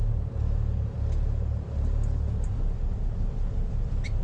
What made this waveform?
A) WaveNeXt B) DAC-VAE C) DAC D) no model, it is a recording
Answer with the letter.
D